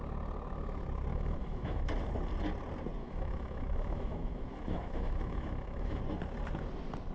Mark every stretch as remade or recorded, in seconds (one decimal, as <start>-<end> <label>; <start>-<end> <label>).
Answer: 0.0-1.1 recorded; 1.1-1.9 remade; 1.9-3.0 recorded; 3.0-6.0 remade; 6.0-7.1 recorded